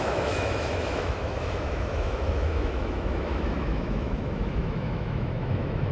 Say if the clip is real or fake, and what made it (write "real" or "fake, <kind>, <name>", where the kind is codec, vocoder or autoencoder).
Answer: fake, autoencoder, DAC-VAE